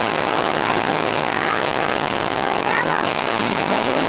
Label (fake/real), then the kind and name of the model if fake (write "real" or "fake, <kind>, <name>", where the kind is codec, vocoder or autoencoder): fake, vocoder, HiFi-GAN